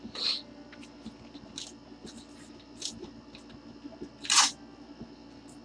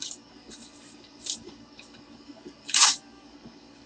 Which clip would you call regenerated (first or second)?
second